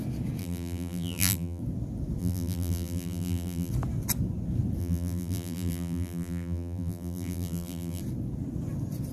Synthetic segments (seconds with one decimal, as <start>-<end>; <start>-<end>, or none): 0.4-1.6; 2.2-3.7; 4.8-8.0